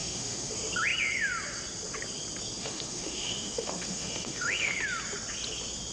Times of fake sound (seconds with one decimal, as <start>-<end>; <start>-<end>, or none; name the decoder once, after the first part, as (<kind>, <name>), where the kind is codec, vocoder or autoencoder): 0.0-0.5 (autoencoder, DAC-VAE); 2.6-4.7